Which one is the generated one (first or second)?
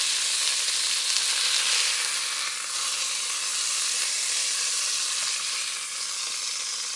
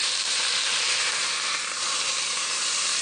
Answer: second